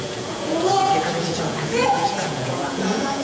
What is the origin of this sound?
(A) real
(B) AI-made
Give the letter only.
B